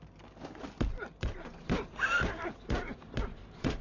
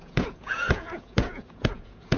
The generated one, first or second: second